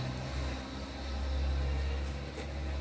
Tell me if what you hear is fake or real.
real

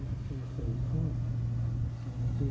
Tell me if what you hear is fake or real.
real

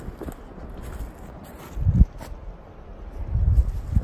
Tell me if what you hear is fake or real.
real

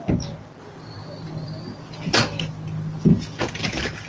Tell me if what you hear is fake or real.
real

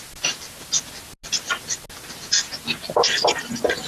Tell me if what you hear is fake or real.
real